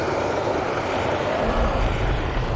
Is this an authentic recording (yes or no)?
no